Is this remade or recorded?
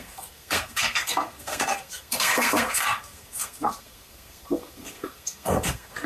remade